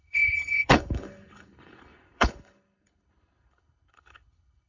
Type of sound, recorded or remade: remade